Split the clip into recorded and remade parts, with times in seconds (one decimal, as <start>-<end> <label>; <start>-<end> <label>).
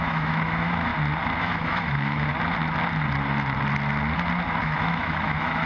0.0-0.9 remade; 0.9-1.4 recorded; 1.4-2.3 remade; 2.3-4.6 recorded; 4.6-5.7 remade